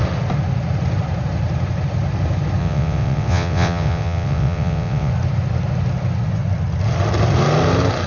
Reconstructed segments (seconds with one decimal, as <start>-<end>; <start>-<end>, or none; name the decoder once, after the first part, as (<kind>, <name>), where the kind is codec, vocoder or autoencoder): 2.6-5.1 (vocoder, WaveNeXt)